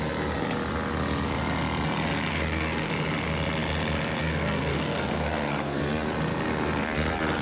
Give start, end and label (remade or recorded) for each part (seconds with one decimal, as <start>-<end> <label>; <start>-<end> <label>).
0.0-2.3 recorded; 2.3-2.9 remade; 2.9-4.2 recorded; 4.2-5.8 remade; 5.8-7.4 recorded

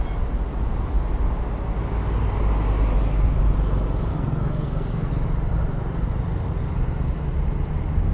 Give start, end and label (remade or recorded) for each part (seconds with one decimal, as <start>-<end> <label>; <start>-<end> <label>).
0.0-4.1 recorded; 4.1-5.1 remade; 5.1-8.1 recorded

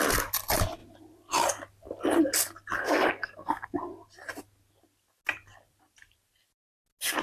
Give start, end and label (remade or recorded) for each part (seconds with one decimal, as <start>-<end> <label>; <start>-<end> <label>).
0.0-2.8 recorded; 2.8-3.8 remade; 3.8-7.2 recorded

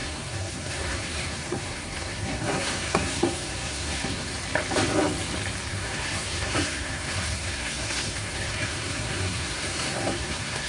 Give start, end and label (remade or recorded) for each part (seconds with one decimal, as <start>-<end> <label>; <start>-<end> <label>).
0.0-4.3 remade; 4.3-5.7 recorded; 5.7-10.7 remade

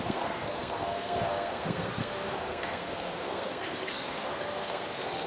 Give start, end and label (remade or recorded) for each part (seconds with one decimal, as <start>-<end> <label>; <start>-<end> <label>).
0.0-5.3 remade

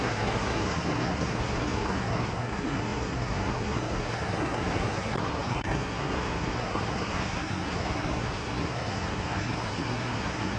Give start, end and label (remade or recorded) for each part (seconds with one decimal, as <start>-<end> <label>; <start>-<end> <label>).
0.0-10.6 remade

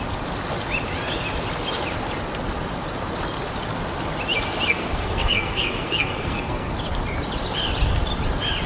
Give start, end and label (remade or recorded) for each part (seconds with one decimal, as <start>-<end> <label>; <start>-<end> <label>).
0.0-4.7 recorded; 4.7-6.7 remade; 6.7-8.7 recorded

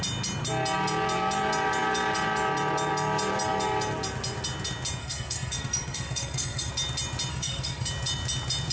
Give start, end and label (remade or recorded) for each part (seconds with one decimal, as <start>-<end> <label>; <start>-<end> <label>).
0.0-5.0 recorded; 5.0-6.7 remade; 6.7-7.3 recorded; 7.3-7.9 remade; 7.9-8.7 recorded